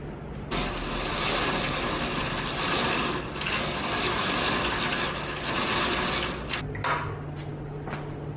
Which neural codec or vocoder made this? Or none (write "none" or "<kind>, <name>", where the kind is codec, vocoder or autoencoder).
none